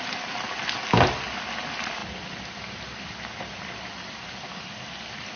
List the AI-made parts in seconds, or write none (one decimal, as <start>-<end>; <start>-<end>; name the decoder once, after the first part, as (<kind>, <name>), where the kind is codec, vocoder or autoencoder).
none